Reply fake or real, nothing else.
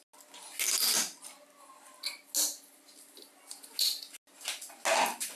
real